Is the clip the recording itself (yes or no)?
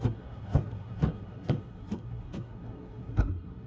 no